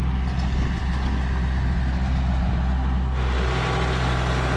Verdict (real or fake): real